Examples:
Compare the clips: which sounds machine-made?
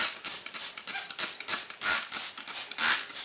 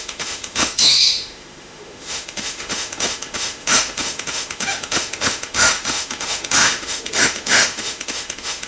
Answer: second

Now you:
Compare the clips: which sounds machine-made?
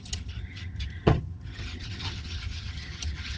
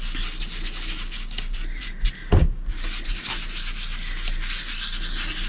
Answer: first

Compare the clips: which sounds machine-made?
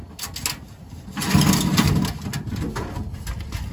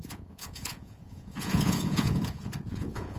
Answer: second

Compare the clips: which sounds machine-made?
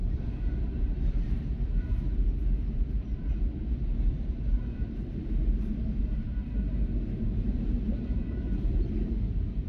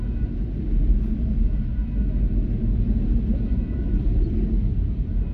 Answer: first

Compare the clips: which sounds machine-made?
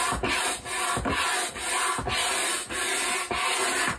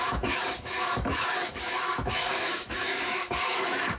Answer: second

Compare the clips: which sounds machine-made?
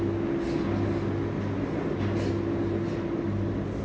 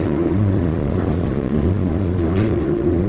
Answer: second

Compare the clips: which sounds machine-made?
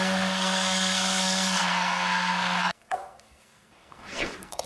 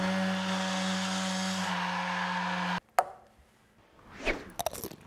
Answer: first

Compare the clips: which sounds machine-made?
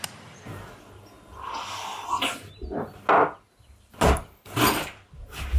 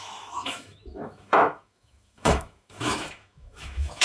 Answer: second